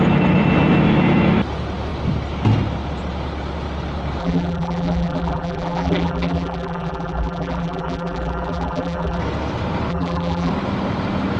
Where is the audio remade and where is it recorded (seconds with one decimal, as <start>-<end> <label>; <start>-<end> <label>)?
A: 0.0-4.2 recorded; 4.2-9.2 remade; 9.2-9.9 recorded; 9.9-10.5 remade; 10.5-11.4 recorded